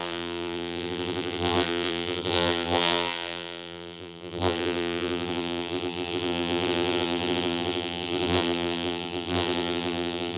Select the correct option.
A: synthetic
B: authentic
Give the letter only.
A